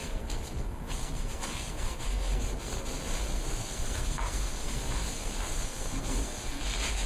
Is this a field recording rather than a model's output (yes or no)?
no